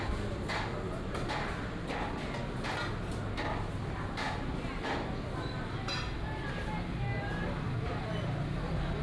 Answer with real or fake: real